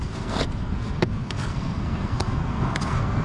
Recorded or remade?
remade